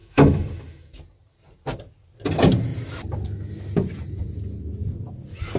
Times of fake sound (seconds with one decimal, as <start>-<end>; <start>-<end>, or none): 0.0-0.9